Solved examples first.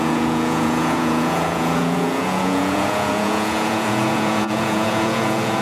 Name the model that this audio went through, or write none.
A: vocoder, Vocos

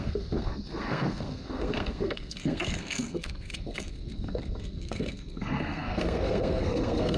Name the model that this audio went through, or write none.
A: codec, SNAC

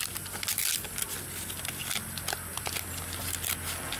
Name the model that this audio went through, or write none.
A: none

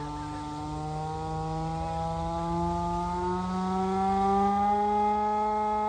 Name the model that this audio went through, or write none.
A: none